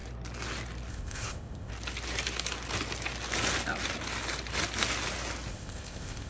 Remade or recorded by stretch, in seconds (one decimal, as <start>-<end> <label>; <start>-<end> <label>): 0.0-0.9 recorded; 0.9-1.7 remade; 1.7-5.5 recorded; 5.5-6.3 remade